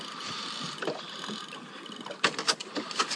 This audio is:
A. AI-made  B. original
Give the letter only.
B